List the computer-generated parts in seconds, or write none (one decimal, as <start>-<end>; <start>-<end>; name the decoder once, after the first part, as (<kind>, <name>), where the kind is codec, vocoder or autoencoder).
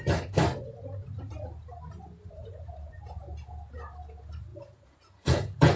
4.5-5.8 (vocoder, Vocos)